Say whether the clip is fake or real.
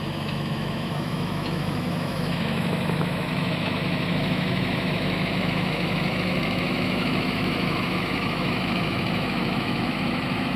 fake